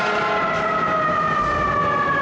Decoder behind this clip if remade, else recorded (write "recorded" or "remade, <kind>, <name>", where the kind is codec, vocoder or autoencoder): recorded